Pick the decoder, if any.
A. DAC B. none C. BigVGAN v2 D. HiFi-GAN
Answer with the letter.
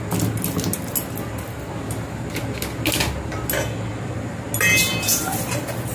B